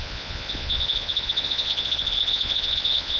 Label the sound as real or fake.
fake